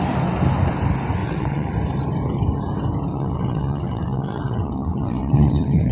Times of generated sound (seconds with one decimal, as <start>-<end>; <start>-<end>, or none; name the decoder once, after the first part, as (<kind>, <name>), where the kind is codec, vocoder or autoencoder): 1.2-1.7 (vocoder, WaveNeXt); 3.1-5.9